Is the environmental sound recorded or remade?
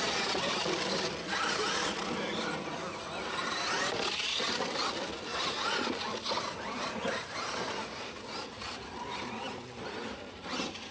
recorded